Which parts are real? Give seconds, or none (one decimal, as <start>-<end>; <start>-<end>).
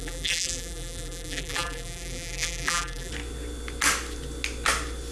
3.1-5.1